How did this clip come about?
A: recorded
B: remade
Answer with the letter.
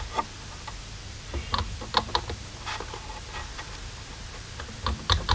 A